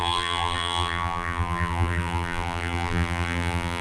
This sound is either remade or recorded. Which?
remade